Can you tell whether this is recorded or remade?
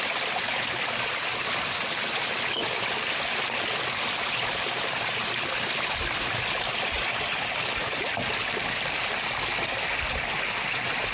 recorded